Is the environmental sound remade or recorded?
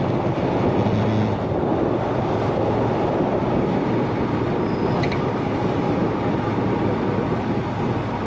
recorded